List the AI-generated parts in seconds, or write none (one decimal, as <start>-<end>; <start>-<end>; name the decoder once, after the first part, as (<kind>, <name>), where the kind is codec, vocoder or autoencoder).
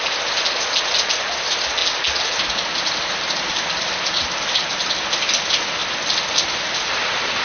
none